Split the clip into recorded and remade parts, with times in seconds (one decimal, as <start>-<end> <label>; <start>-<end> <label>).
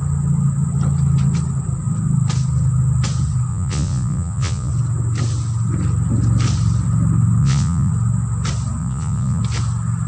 0.0-3.5 recorded; 3.5-4.7 remade; 4.7-7.4 recorded; 7.4-7.9 remade; 7.9-8.8 recorded; 8.8-9.4 remade; 9.4-10.1 recorded